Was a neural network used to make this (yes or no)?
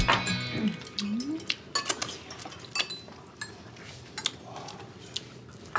no